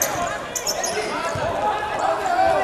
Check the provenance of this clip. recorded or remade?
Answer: recorded